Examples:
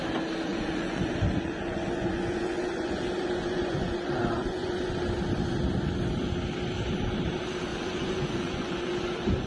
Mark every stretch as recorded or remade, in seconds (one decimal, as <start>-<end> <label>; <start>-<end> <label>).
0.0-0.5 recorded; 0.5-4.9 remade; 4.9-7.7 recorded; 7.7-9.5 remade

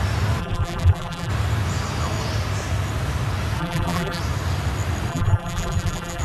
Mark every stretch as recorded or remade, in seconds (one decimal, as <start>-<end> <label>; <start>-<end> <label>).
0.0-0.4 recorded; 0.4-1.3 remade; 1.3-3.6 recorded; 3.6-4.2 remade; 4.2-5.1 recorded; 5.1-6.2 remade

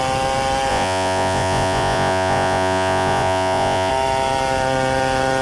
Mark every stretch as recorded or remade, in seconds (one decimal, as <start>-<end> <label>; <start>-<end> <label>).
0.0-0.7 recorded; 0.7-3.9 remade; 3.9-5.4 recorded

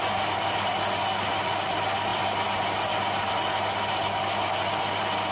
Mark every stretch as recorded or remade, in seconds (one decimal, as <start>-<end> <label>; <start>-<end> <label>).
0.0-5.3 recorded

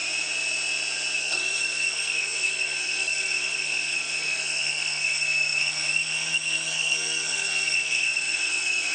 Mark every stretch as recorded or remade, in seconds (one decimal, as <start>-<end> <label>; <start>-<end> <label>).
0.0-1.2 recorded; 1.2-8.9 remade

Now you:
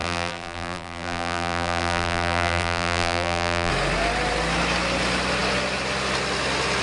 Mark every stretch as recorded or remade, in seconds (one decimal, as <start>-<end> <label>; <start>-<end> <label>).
0.0-3.7 remade; 3.7-6.8 recorded

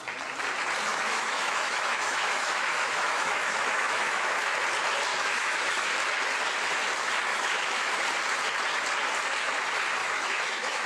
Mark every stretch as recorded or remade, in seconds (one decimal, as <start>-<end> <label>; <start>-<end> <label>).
0.0-0.9 recorded; 0.9-4.3 remade; 4.3-5.1 recorded; 5.1-5.9 remade; 5.9-7.3 recorded; 7.3-7.9 remade; 7.9-10.0 recorded; 10.0-10.9 remade

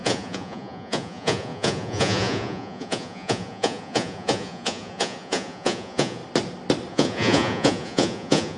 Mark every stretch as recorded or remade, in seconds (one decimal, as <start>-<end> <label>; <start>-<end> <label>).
0.0-6.2 remade; 6.2-6.9 recorded; 6.9-8.6 remade